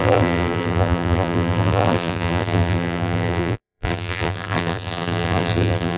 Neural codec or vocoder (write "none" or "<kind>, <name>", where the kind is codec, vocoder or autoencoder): vocoder, BigVGAN v2